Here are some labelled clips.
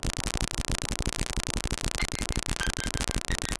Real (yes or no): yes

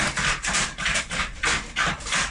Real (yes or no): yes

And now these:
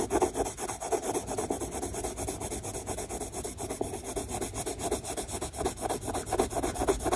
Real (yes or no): yes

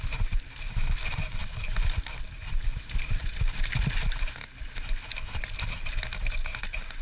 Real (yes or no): yes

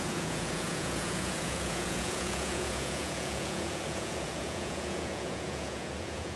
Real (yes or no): no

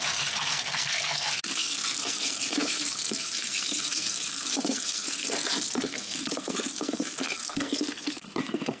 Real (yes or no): no